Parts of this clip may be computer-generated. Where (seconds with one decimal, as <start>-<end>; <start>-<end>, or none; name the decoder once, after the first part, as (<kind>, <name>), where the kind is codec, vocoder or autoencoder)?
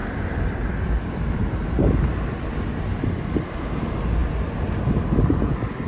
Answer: none